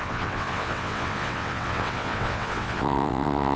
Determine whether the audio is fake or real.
fake